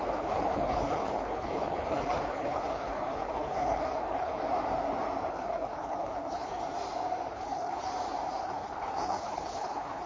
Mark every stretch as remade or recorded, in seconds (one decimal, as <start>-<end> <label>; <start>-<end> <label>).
0.0-4.4 remade; 4.4-5.3 recorded; 5.3-6.6 remade; 6.6-7.3 recorded; 7.3-7.9 remade; 7.9-8.4 recorded; 8.4-10.1 remade